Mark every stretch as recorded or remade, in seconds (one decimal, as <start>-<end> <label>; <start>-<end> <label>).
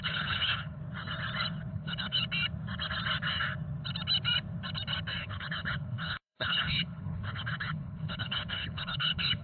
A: 0.0-0.8 remade; 0.8-1.7 recorded; 1.7-2.2 remade; 2.2-5.2 recorded; 5.2-9.4 remade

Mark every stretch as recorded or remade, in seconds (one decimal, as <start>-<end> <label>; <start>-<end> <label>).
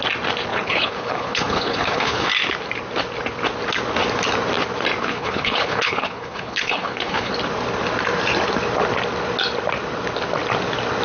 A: 0.0-0.5 recorded; 0.5-2.3 remade; 2.3-5.0 recorded; 5.0-7.3 remade; 7.3-11.0 recorded